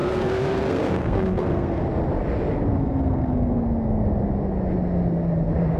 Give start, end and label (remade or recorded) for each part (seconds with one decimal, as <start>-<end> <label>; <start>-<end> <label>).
0.0-1.8 remade; 1.8-2.8 recorded; 2.8-3.6 remade; 3.6-5.8 recorded